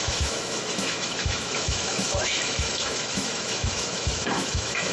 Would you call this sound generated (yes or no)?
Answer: yes